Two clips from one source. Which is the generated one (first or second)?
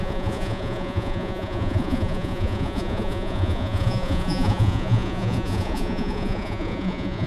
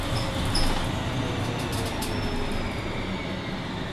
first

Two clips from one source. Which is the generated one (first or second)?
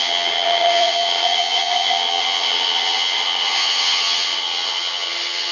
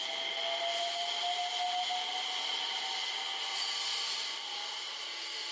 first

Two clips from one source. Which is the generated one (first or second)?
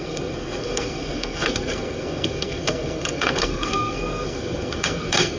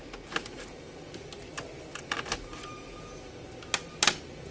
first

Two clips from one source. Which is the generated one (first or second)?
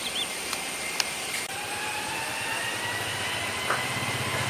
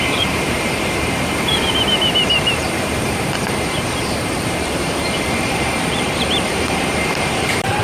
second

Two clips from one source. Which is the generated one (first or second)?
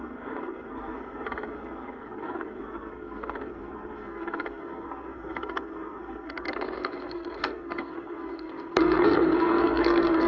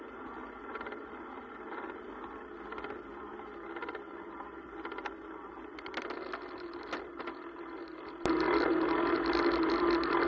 first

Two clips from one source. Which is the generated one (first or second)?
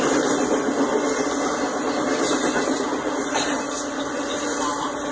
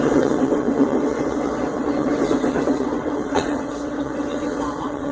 second